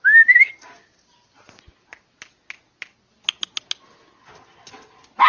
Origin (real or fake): real